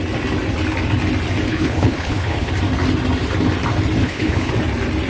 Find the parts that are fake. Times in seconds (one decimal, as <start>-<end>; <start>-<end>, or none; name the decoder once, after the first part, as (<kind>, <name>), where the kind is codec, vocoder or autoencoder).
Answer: 1.5-2.5 (codec, HILCodec); 4.0-4.5